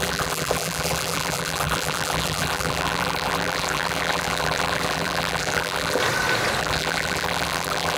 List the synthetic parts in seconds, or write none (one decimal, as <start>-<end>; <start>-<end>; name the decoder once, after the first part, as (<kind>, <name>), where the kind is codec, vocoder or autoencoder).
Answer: 0.0-6.0 (vocoder, BigVGAN v2); 6.6-8.0